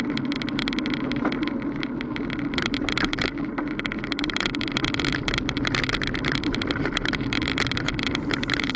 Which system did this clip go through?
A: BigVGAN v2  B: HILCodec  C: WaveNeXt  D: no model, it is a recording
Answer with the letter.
A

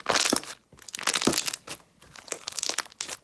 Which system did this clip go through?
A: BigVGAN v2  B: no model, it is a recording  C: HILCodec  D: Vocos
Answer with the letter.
B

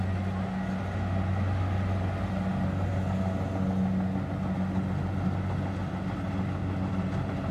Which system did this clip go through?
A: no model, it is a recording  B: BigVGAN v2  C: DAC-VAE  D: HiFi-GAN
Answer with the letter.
A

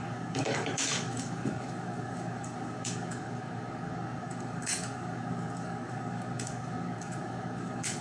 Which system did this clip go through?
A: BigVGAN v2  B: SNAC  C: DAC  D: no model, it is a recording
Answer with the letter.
C